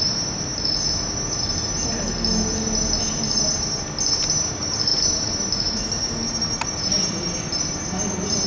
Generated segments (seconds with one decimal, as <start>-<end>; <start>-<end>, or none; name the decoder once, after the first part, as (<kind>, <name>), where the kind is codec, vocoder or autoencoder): none